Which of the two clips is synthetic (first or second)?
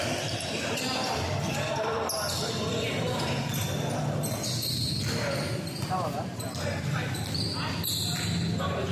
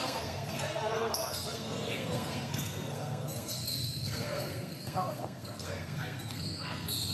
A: second